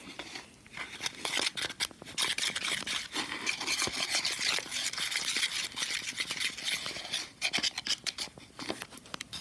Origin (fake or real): real